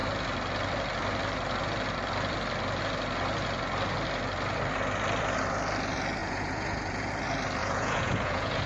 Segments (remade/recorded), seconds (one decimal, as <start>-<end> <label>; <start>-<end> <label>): 0.0-6.2 recorded; 6.2-7.1 remade; 7.1-7.6 recorded; 7.6-8.7 remade